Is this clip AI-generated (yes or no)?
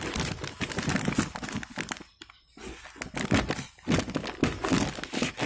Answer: no